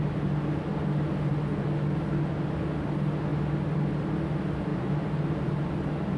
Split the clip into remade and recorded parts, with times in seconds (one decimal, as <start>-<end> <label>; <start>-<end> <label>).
0.0-4.7 recorded; 4.7-5.7 remade; 5.7-6.2 recorded